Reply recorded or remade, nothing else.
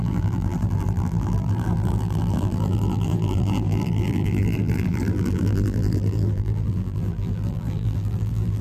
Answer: remade